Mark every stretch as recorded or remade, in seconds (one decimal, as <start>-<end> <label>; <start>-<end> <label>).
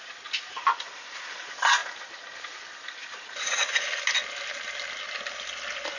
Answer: 0.0-6.0 recorded